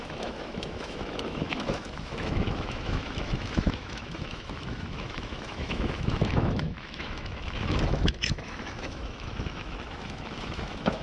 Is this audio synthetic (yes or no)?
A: yes